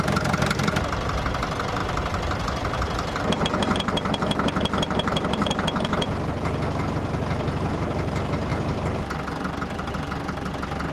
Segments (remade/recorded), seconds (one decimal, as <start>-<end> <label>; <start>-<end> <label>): 0.0-10.9 recorded